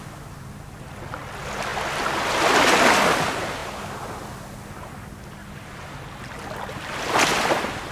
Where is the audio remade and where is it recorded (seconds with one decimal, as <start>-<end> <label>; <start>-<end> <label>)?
0.0-7.9 recorded

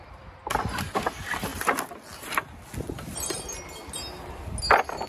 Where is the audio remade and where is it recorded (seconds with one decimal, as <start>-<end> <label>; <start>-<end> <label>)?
0.0-5.1 recorded

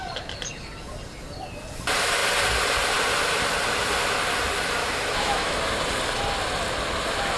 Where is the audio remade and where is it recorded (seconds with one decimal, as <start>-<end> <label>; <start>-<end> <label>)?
0.0-4.8 recorded; 4.8-5.6 remade; 5.6-7.4 recorded

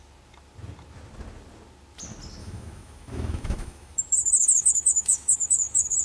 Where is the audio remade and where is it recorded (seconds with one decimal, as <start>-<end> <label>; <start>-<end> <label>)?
0.0-2.4 recorded; 2.4-6.0 remade